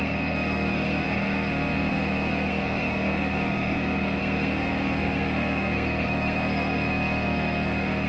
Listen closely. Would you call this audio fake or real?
fake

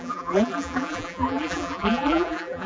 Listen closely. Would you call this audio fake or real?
fake